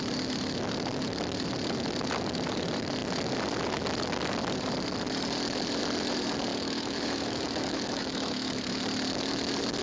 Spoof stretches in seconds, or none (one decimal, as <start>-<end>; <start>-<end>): 6.5-8.8